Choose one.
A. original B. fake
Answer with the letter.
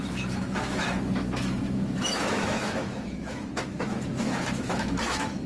B